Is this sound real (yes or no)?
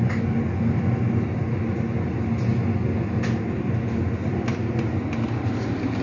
yes